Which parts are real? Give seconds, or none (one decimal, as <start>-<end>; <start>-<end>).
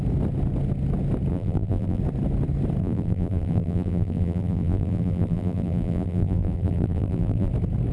0.0-1.3; 2.0-2.8; 7.5-7.9